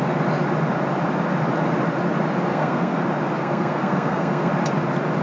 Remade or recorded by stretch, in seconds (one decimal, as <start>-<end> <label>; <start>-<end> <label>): 0.0-2.5 recorded; 2.5-3.0 remade; 3.0-3.4 recorded; 3.4-4.5 remade; 4.5-5.2 recorded